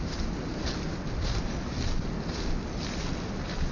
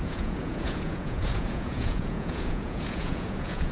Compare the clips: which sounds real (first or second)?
first